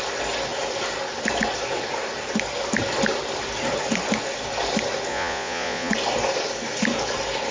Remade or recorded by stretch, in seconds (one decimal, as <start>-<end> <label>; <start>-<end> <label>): 0.0-5.1 recorded; 5.1-5.9 remade; 5.9-7.5 recorded